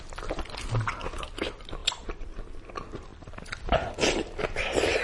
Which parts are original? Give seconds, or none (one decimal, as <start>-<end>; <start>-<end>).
0.0-5.0